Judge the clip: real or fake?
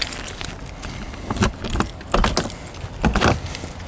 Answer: real